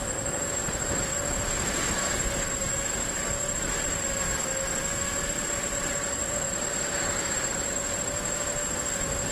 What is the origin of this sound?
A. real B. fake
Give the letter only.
A